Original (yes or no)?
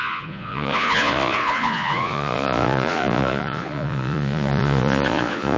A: no